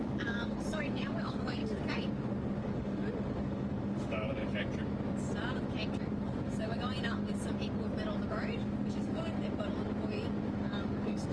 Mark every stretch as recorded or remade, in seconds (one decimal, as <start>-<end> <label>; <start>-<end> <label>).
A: 0.0-1.6 remade; 1.6-2.6 recorded; 2.6-4.4 remade; 4.4-8.9 recorded; 8.9-9.3 remade; 9.3-10.5 recorded; 10.5-11.3 remade